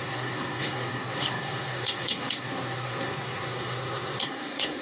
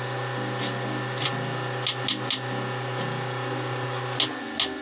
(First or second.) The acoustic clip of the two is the second